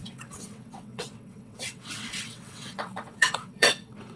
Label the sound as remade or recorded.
remade